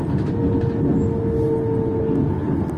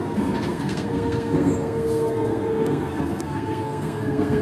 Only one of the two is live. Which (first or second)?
first